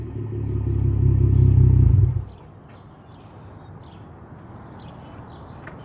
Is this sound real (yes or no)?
yes